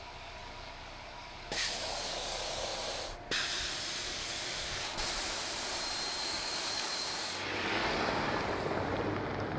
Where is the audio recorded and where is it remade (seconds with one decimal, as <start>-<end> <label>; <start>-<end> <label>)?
0.0-2.7 remade; 2.7-4.0 recorded; 4.0-4.9 remade; 4.9-6.2 recorded; 6.2-7.8 remade; 7.8-9.6 recorded